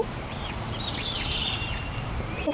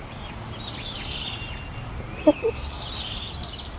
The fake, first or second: first